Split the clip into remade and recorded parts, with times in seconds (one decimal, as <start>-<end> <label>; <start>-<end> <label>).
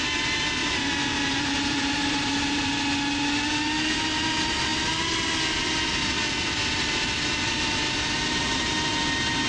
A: 0.0-0.6 recorded; 0.6-2.7 remade; 2.7-9.5 recorded